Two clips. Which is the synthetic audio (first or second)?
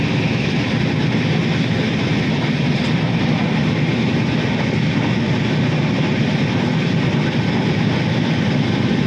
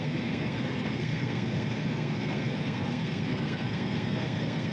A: second